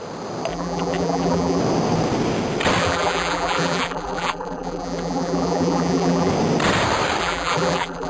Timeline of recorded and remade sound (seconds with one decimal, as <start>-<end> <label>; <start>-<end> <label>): 0.0-0.5 recorded; 0.5-1.6 remade; 1.6-2.8 recorded; 2.8-6.3 remade; 6.3-7.2 recorded; 7.2-8.1 remade

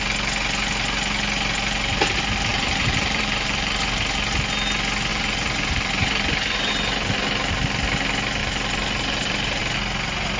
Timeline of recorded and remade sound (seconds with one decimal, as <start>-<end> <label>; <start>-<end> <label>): 0.0-2.5 recorded; 2.5-3.7 remade; 3.7-5.1 recorded; 5.1-6.7 remade; 6.7-8.4 recorded; 8.4-9.6 remade; 9.6-10.4 recorded

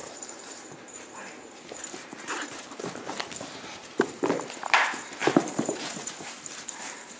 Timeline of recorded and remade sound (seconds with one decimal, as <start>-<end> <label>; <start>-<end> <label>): 0.0-7.2 remade

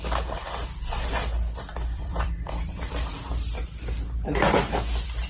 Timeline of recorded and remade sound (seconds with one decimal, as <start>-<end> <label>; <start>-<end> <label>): 0.0-1.7 recorded; 1.7-3.1 remade; 3.1-5.3 recorded

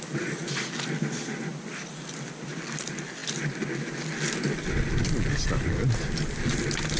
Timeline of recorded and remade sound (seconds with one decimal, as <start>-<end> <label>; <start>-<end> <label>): 0.0-7.0 recorded

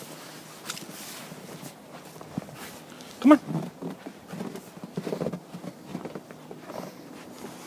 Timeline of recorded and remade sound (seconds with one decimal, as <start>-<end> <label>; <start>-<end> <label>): 0.0-3.8 recorded; 3.8-4.3 remade; 4.3-5.9 recorded; 5.9-7.7 remade

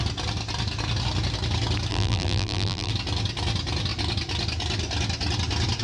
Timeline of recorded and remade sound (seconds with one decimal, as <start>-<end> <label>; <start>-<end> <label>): 0.0-1.9 recorded; 1.9-2.9 remade; 2.9-5.8 recorded

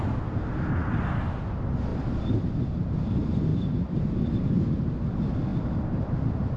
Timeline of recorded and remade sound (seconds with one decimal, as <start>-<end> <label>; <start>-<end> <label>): 0.0-1.9 recorded; 1.9-2.9 remade; 2.9-3.5 recorded; 3.5-4.0 remade; 4.0-6.6 recorded